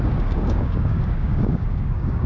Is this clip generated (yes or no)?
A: yes